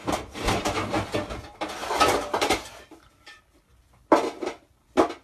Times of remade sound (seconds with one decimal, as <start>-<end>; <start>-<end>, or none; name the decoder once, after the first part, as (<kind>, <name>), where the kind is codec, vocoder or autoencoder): 0.0-0.9 (vocoder, BigVGAN v2); 1.8-2.7